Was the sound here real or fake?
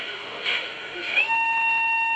fake